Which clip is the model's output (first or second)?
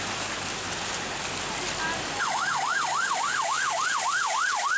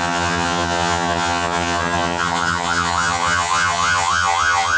second